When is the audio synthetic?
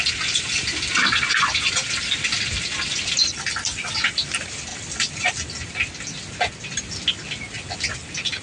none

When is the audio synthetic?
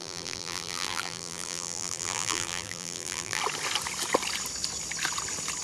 0.0-3.4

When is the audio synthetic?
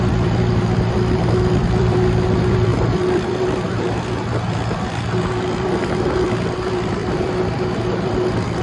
0.0-8.6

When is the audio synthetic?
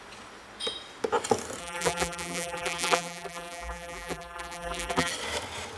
1.6-5.1